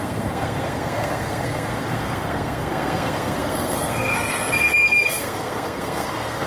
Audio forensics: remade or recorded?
remade